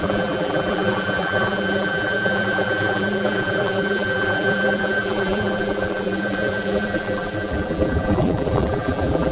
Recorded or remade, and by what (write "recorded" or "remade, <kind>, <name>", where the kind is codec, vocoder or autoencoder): remade, vocoder, BigVGAN v2